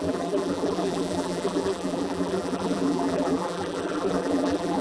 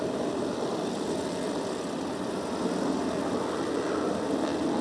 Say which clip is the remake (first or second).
first